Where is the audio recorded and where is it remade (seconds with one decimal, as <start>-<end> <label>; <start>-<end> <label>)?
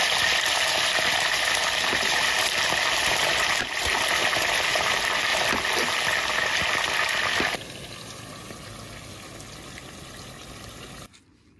0.0-11.6 recorded